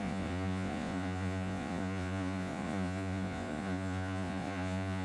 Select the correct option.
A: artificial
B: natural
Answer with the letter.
A